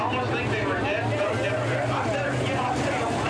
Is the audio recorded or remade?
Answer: recorded